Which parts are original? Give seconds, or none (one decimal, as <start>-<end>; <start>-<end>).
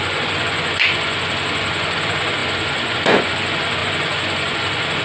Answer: none